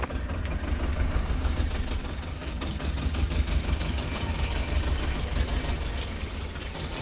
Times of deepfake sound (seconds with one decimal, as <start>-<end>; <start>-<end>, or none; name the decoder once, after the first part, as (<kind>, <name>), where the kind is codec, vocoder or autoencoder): 0.9-1.6 (codec, DAC); 2.0-4.8